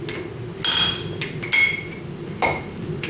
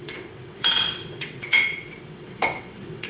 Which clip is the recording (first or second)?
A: first